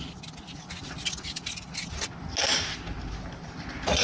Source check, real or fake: real